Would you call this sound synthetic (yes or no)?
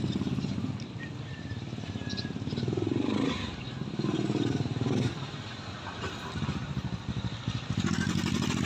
yes